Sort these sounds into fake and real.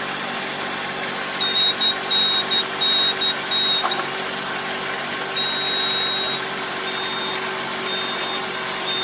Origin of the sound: real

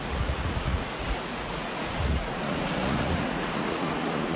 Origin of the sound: fake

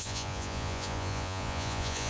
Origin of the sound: fake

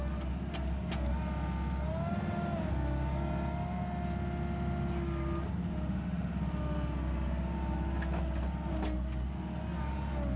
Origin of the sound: real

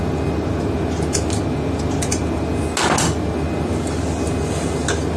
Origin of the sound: real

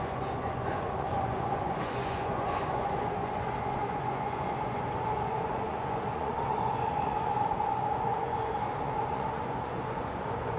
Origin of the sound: fake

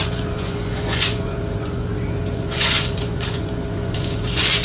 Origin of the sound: fake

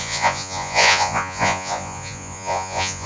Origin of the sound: fake